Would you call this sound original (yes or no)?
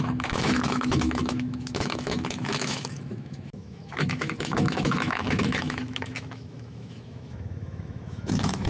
no